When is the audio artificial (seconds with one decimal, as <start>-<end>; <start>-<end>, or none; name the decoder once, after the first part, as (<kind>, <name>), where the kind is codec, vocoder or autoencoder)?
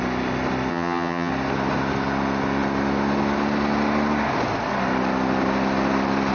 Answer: 0.7-1.3 (vocoder, HiFi-GAN)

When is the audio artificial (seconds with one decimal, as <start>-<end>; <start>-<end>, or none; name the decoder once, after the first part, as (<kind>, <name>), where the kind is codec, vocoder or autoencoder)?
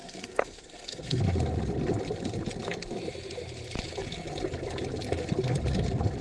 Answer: 0.0-1.2 (codec, SNAC)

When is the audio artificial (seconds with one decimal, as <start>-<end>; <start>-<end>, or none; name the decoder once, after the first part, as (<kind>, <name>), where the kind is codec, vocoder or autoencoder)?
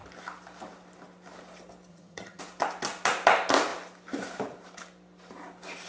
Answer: 1.9-2.4 (vocoder, HiFi-GAN)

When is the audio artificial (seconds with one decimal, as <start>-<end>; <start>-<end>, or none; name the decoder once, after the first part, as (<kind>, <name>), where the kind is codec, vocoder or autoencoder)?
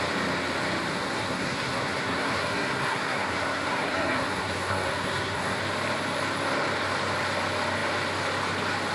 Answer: 0.9-5.6 (codec, SNAC)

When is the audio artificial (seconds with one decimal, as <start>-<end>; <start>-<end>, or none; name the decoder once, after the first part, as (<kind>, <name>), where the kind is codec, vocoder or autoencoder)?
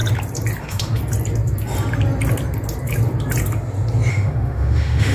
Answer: 0.6-1.0 (autoencoder, DAC-VAE); 4.1-5.1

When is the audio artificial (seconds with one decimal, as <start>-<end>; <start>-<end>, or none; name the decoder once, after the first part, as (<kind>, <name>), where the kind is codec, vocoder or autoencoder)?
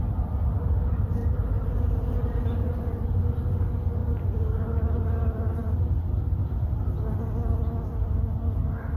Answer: 1.2-3.0 (vocoder, BigVGAN v2); 4.0-6.2